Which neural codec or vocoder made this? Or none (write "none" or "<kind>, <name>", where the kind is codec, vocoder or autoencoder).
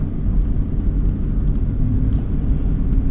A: none